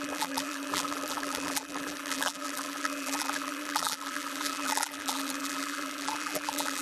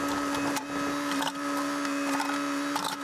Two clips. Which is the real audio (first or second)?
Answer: second